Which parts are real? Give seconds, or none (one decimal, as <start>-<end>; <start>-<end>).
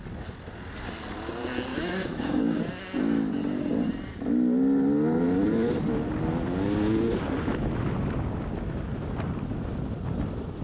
0.0-1.7; 2.6-10.6